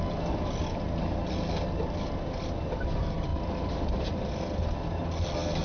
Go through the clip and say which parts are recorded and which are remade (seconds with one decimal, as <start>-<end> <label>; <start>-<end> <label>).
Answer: 0.0-5.6 recorded